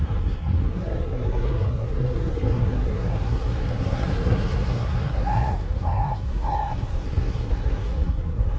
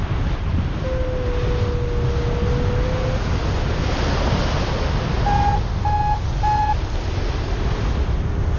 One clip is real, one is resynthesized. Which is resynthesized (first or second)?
first